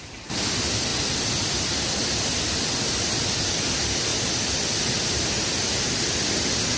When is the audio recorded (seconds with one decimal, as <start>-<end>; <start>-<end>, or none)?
0.0-0.9; 3.3-4.1; 6.1-6.8